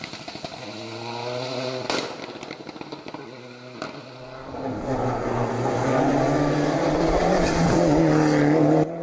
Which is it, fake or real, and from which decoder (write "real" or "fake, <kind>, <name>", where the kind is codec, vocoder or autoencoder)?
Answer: real